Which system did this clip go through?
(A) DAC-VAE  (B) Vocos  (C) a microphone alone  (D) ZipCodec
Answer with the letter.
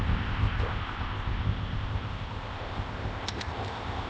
D